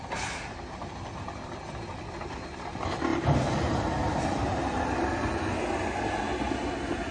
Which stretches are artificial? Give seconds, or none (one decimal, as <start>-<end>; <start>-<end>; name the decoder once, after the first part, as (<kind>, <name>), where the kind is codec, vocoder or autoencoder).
3.1-4.8 (vocoder, BigVGAN v2)